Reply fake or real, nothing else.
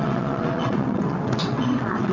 fake